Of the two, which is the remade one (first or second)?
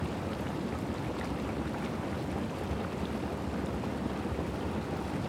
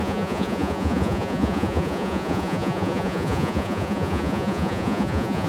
second